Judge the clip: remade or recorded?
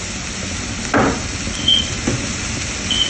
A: recorded